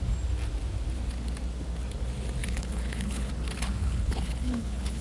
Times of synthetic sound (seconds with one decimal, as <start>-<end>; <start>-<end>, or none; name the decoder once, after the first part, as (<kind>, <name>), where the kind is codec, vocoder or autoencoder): 2.4-3.3 (codec, HILCodec); 3.8-5.0